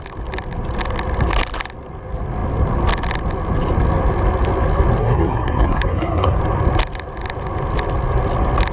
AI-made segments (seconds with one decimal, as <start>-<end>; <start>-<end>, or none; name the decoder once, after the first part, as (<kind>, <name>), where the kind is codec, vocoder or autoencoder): 5.0-6.4 (codec, SNAC)